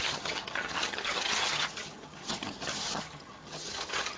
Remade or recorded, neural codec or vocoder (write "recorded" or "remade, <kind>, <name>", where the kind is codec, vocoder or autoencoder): remade, vocoder, HiFi-GAN